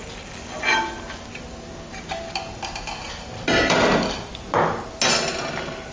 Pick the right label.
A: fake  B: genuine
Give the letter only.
B